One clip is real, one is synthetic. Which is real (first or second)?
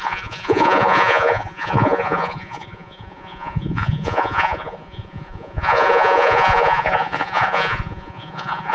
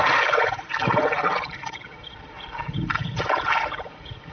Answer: second